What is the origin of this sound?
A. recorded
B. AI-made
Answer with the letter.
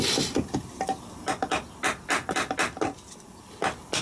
A